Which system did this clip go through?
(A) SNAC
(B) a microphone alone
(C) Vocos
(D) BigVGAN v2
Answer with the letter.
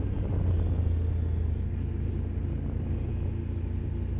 B